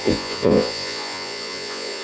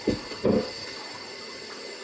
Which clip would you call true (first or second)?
second